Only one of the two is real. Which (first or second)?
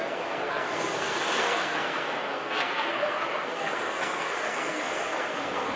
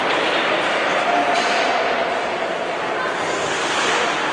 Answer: second